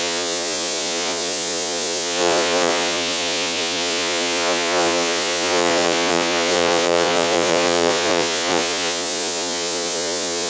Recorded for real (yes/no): no